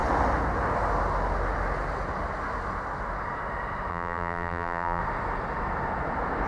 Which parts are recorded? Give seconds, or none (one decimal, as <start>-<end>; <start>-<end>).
0.0-3.9; 5.0-6.5

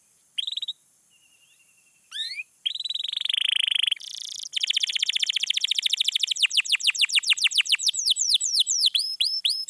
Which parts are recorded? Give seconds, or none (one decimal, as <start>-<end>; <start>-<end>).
none